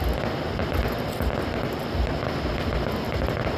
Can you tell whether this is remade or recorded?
recorded